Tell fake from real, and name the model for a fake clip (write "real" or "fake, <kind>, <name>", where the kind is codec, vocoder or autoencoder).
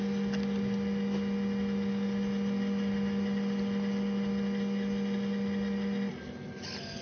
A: real